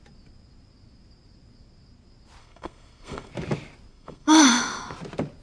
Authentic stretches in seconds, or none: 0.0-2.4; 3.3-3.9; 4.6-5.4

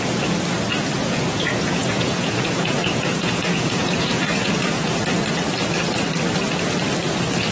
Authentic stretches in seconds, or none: 0.0-1.0; 4.6-7.5

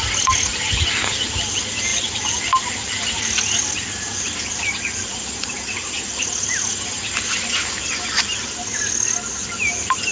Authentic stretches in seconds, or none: 0.0-10.1

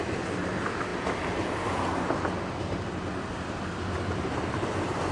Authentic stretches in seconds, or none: 0.0-5.1

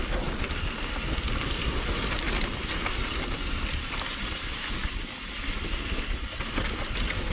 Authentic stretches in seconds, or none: 0.0-7.3

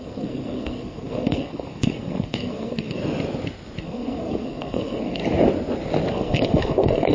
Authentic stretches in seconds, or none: 3.0-3.8; 5.2-6.1